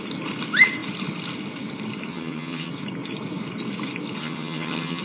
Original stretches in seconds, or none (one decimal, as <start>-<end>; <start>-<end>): 0.0-2.1; 2.7-4.2